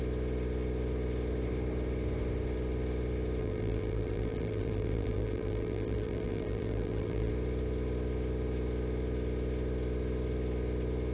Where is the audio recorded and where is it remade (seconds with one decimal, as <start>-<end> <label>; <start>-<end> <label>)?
0.0-3.4 recorded; 3.4-7.3 remade; 7.3-11.1 recorded